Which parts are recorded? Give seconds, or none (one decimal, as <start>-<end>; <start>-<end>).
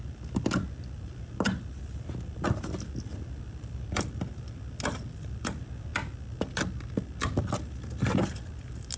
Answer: 0.0-9.0